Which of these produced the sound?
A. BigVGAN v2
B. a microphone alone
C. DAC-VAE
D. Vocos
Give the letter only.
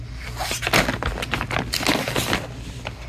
B